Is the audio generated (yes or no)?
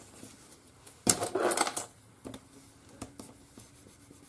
no